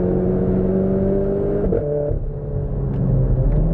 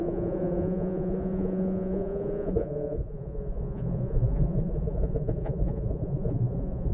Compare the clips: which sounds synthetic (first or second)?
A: second